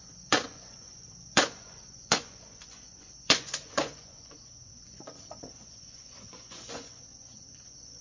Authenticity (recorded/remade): remade